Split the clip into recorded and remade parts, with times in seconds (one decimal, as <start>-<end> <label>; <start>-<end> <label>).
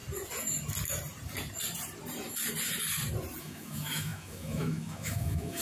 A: 0.0-3.4 recorded; 3.4-5.6 remade